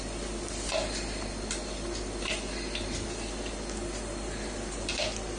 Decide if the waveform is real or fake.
real